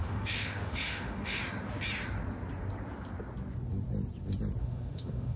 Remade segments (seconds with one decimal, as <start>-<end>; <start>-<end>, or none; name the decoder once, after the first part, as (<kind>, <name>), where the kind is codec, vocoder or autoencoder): 0.0-1.4 (autoencoder, DAC-VAE); 4.6-5.4